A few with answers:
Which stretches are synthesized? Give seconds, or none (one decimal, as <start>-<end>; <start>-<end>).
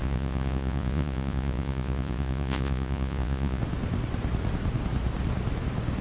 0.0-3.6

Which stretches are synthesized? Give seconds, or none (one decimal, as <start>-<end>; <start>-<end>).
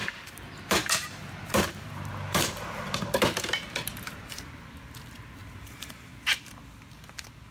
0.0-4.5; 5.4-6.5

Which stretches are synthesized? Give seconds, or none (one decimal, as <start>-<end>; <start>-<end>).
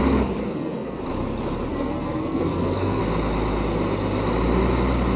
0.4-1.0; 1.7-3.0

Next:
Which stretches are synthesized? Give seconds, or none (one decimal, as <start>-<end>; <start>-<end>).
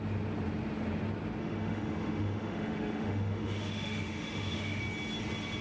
1.4-4.8